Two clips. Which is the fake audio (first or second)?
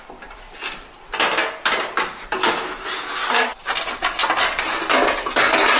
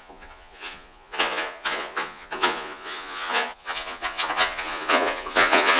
second